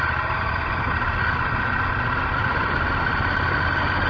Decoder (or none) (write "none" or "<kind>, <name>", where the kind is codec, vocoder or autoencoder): none